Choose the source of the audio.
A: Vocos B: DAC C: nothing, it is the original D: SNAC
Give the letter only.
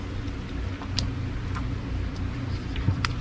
C